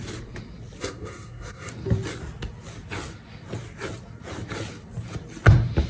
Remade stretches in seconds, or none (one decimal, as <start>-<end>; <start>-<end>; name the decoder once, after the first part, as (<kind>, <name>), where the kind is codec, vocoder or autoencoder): 0.8-1.7 (codec, SNAC)